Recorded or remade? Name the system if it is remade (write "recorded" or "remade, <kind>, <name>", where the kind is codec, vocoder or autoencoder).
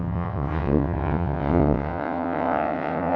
remade, vocoder, WaveNeXt